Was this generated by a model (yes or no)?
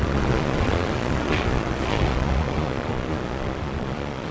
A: yes